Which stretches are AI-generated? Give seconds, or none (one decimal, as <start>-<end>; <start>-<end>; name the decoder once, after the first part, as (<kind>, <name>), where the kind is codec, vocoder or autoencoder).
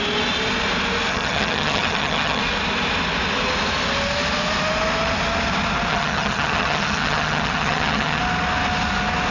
1.1-2.4 (vocoder, HiFi-GAN); 5.9-8.2